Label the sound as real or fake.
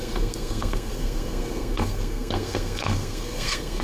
fake